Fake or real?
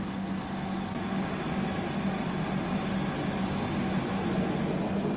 real